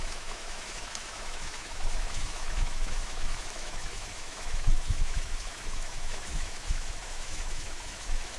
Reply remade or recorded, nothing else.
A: remade